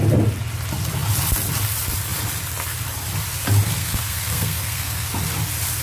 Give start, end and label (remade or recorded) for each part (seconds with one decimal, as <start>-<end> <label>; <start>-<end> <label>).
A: 0.0-3.8 recorded; 3.8-5.1 remade; 5.1-5.8 recorded